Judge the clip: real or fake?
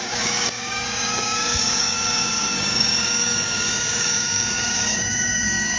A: fake